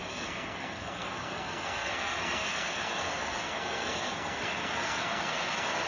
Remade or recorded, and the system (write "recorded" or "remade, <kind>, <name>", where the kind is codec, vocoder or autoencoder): remade, codec, SNAC